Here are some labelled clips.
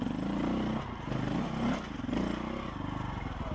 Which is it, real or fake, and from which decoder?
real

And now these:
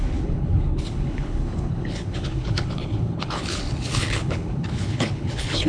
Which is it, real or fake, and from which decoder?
fake, codec, HILCodec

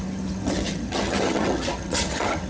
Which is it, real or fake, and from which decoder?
fake, vocoder, HiFi-GAN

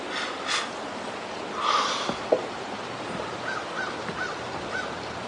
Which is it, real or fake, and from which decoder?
real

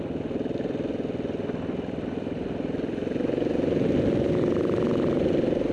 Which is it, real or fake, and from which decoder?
real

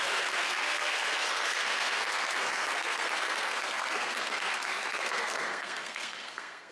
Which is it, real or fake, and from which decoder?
fake, codec, SNAC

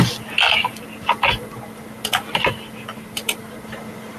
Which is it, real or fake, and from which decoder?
real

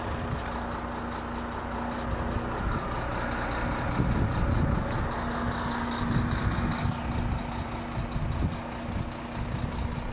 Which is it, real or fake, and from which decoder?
real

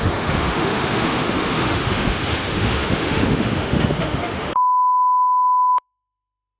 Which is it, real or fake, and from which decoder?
fake, autoencoder, DAC-VAE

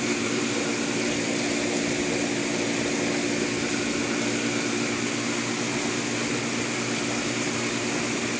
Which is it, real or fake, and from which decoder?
real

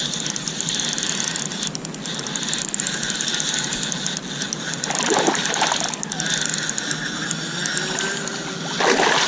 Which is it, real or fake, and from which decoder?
real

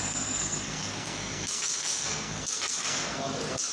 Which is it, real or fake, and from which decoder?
fake, codec, SNAC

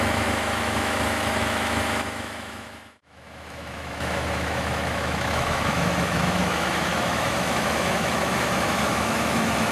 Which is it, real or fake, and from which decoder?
fake, autoencoder, DAC-VAE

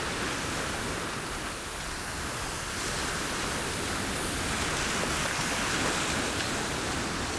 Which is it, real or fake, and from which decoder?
real